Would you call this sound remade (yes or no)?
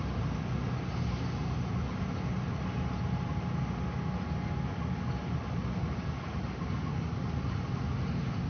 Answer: no